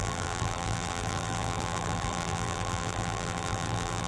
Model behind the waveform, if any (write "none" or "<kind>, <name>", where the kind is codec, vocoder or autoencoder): vocoder, BigVGAN v2